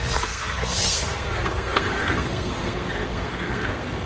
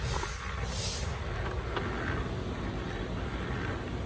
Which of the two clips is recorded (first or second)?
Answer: second